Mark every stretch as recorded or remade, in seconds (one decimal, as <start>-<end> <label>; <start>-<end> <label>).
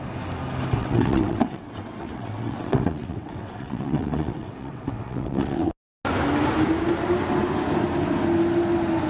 0.0-0.8 recorded; 0.8-5.7 remade; 5.7-9.1 recorded